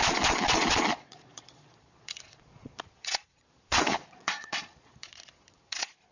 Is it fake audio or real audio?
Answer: fake